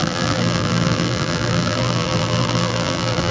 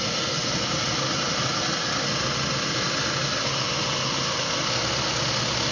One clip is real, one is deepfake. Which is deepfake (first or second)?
first